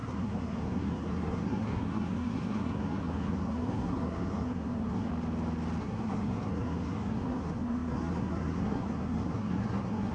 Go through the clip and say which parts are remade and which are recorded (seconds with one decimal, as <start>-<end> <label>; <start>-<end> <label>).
0.0-5.1 remade; 5.1-5.8 recorded; 5.8-10.1 remade